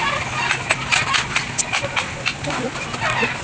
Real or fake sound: real